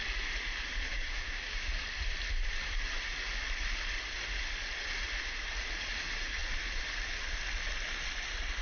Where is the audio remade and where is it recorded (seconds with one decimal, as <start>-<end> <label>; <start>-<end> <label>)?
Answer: 0.0-0.9 recorded; 0.9-1.7 remade; 1.7-8.6 recorded